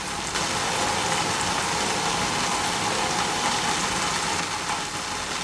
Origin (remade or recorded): recorded